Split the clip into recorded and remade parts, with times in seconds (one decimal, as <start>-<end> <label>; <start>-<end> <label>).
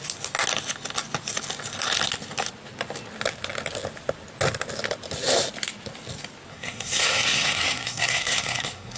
0.0-6.5 recorded; 6.5-9.0 remade